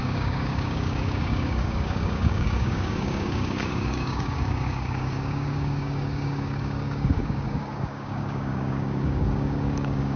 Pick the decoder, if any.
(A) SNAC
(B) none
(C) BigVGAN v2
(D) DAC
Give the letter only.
D